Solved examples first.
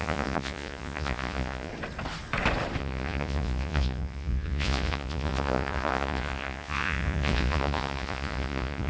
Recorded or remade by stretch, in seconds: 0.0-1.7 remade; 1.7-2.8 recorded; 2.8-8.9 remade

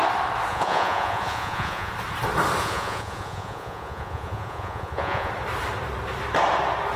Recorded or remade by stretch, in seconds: 0.0-0.5 recorded; 0.5-1.9 remade; 1.9-2.6 recorded; 2.6-5.3 remade; 5.3-7.0 recorded

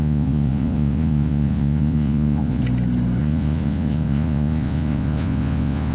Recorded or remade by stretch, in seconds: 0.0-2.6 remade; 2.6-3.2 recorded; 3.2-5.9 remade

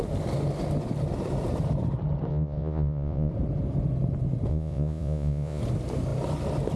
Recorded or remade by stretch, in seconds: 0.0-2.3 recorded; 2.3-3.3 remade; 3.3-4.5 recorded; 4.5-5.6 remade; 5.6-6.8 recorded

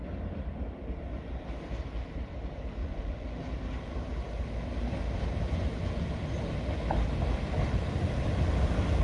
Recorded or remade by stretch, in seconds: 0.0-2.8 recorded; 2.8-3.4 remade; 3.4-9.0 recorded

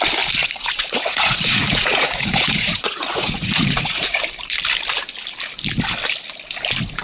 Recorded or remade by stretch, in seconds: 0.0-0.4 recorded; 0.4-4.2 remade; 4.2-7.0 recorded